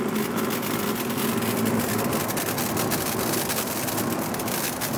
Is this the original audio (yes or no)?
yes